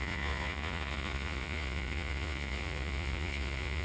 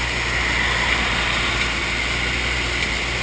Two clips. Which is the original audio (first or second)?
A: second